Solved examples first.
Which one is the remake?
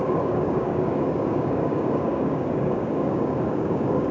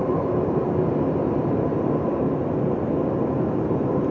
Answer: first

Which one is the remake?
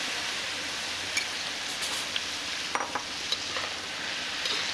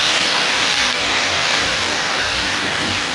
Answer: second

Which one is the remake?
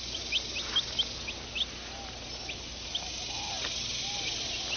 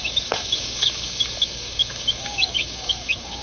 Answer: second